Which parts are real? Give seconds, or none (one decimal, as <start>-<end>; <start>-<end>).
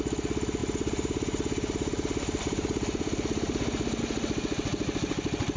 0.0-0.6; 4.0-5.6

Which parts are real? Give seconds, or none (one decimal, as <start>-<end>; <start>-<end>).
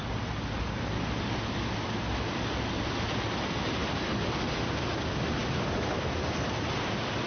0.0-7.3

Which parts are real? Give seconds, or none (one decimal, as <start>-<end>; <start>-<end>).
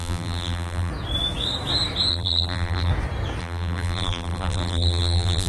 0.9-2.1; 2.9-3.4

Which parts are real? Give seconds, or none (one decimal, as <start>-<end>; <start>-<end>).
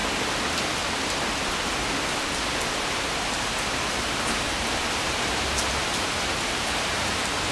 0.0-2.8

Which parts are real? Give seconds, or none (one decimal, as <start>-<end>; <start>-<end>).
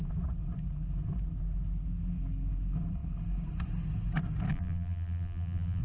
0.0-4.5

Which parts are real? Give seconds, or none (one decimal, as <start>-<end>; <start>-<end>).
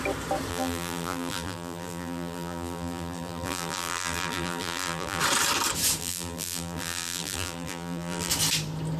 0.0-0.5; 5.2-6.0; 8.3-9.0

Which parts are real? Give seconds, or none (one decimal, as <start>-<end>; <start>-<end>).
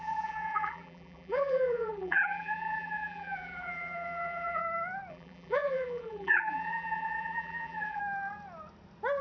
4.6-5.1; 8.0-9.2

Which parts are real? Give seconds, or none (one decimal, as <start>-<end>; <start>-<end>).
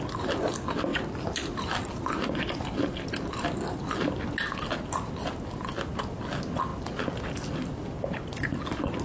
0.0-0.9; 1.7-9.0